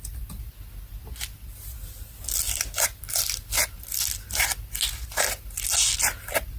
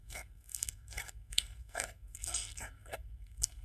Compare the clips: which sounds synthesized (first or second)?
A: second